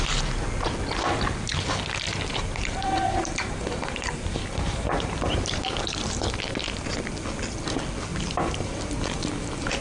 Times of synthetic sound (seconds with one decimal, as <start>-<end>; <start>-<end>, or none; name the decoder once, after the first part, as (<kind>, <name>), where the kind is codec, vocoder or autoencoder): 2.1-6.9 (vocoder, BigVGAN v2); 8.1-9.8